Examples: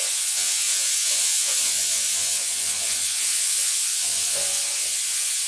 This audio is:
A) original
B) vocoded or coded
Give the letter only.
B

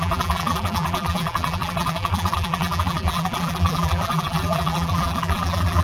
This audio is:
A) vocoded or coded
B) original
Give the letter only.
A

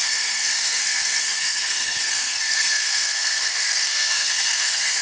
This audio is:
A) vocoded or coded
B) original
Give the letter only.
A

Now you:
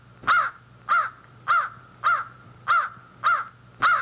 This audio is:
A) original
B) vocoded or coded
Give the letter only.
A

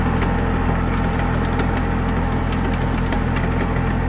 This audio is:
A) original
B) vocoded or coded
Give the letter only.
A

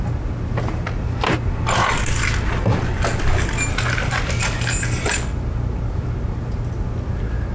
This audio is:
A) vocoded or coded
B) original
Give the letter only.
B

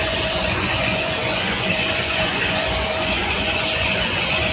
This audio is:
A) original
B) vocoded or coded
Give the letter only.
B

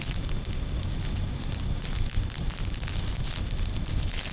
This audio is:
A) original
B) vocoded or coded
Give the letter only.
A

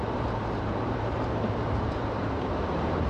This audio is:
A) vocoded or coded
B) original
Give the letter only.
A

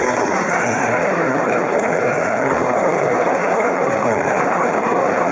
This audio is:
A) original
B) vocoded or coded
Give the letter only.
B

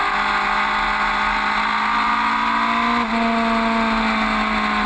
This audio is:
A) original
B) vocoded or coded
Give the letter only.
A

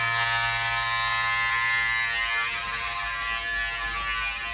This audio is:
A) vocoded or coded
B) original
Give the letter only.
B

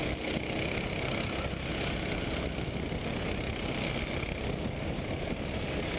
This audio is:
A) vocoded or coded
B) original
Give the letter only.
B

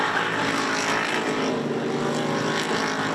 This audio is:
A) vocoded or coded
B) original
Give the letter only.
B